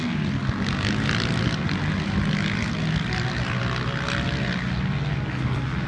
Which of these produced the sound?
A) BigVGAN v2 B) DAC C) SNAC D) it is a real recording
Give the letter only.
D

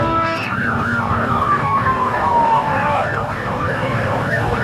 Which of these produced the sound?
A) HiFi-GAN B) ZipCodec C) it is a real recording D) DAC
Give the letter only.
D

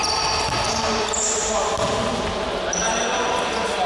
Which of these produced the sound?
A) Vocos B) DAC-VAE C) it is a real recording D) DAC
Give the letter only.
C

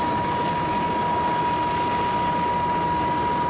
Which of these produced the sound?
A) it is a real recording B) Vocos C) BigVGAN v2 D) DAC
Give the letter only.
A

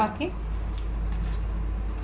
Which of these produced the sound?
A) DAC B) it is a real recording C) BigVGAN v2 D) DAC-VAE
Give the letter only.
B